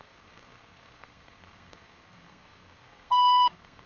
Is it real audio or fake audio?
fake